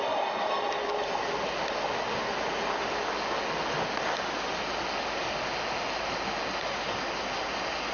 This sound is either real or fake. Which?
real